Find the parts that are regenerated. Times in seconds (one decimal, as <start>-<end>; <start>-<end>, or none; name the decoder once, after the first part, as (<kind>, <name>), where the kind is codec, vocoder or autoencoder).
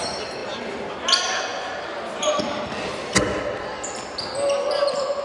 1.5-2.4 (vocoder, BigVGAN v2)